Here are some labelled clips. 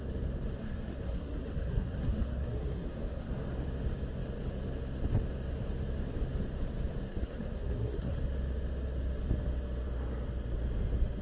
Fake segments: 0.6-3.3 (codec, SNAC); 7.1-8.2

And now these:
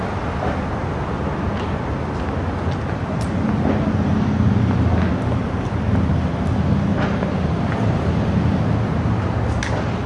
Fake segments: 6.9-8.4 (vocoder, BigVGAN v2)

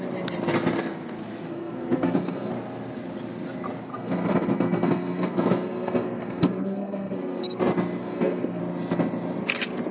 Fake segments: 1.5-2.5 (codec, SNAC); 3.9-7.6; 8.0-8.6

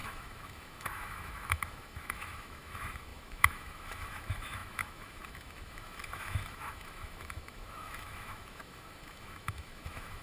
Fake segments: 0.0-10.2 (autoencoder, DAC-VAE)

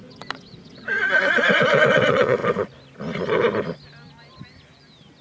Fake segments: 0.0-2.4 (vocoder, WaveNeXt)

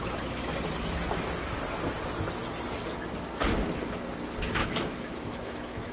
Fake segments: 4.6-5.9 (autoencoder, DAC-VAE)

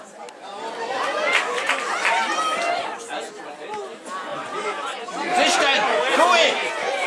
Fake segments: 4.3-5.0 (vocoder, BigVGAN v2)